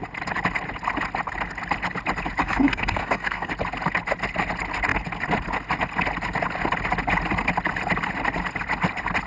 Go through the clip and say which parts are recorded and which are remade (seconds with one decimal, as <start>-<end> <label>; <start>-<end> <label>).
0.0-2.4 recorded; 2.4-3.5 remade; 3.5-9.3 recorded